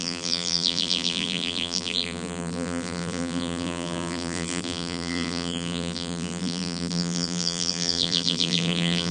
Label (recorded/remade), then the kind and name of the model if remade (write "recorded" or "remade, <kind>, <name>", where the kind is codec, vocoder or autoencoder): remade, vocoder, BigVGAN v2